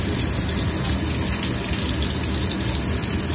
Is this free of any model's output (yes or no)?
yes